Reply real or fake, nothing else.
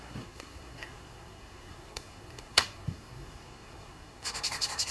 fake